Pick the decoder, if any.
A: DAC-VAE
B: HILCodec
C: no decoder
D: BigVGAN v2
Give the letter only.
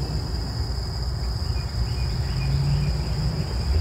C